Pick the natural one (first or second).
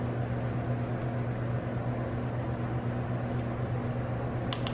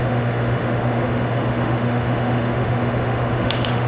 first